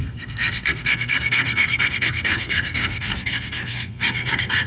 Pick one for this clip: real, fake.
fake